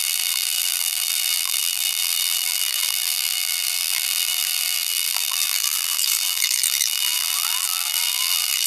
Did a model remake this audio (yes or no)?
yes